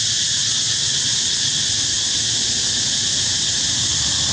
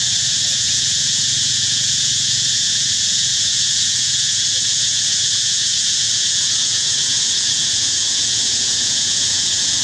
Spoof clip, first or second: second